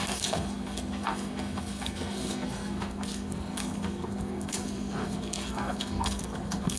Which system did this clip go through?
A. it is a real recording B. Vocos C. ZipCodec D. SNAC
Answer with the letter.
D